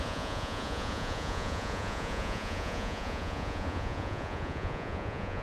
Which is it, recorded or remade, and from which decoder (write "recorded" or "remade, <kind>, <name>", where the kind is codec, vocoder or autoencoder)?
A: remade, vocoder, Vocos